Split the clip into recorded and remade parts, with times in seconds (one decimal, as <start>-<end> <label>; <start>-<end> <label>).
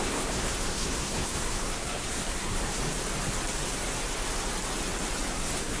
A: 0.0-2.8 remade; 2.8-5.3 recorded; 5.3-5.8 remade